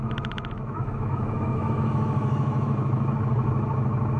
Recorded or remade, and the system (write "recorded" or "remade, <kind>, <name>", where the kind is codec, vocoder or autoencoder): remade, autoencoder, DAC-VAE